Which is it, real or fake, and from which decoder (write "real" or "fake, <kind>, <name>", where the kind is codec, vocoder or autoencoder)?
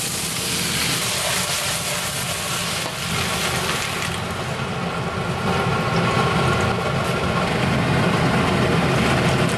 real